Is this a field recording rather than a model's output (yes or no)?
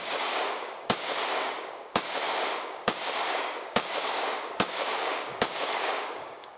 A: no